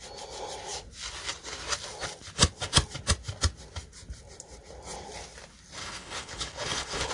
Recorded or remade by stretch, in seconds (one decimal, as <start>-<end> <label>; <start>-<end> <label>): 0.0-5.8 recorded; 5.8-7.1 remade